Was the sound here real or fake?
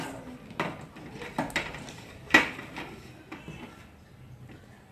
real